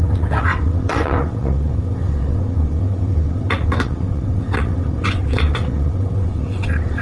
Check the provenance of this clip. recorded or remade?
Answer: remade